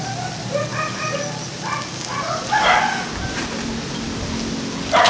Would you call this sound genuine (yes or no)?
yes